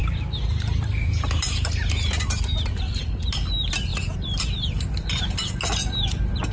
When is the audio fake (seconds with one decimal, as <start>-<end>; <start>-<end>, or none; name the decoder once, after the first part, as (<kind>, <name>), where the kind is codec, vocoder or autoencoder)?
none